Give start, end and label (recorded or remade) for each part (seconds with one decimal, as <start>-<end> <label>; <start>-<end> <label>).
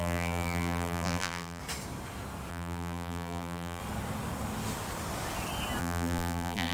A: 0.0-1.6 remade; 1.6-2.5 recorded; 2.5-3.8 remade; 3.8-5.8 recorded; 5.8-6.7 remade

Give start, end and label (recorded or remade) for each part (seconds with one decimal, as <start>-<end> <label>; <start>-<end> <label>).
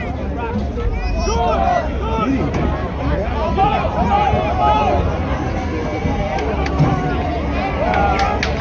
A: 0.0-3.5 recorded; 3.5-4.1 remade; 4.1-5.9 recorded; 5.9-7.3 remade; 7.3-8.6 recorded